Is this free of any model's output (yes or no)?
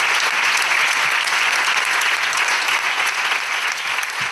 no